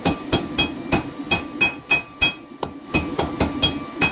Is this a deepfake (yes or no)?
no